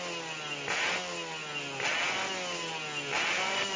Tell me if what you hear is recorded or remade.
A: recorded